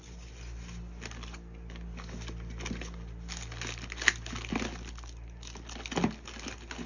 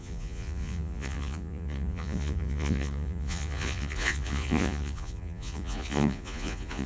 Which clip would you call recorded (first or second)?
first